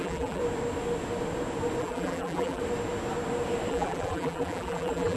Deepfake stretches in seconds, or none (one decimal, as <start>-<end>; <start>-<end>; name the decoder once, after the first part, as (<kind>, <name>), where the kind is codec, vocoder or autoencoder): 0.0-0.4 (vocoder, BigVGAN v2); 1.8-2.6; 3.7-5.2